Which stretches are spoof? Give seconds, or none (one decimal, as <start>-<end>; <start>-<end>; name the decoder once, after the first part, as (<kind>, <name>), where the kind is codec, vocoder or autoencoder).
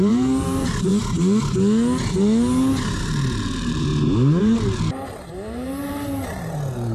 0.0-0.9 (vocoder, BigVGAN v2); 3.0-3.9; 4.4-6.9